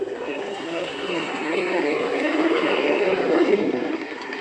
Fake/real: fake